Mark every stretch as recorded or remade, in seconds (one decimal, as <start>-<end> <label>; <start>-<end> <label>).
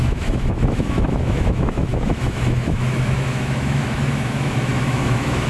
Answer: 0.0-5.5 remade